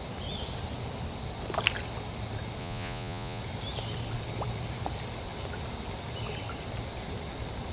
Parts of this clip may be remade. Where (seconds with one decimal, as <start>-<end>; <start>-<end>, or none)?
2.6-3.4